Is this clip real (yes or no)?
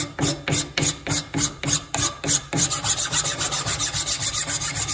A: yes